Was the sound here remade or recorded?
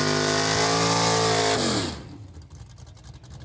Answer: recorded